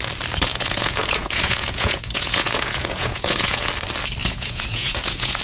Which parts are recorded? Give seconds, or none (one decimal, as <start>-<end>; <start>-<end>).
0.0-0.5; 3.7-4.2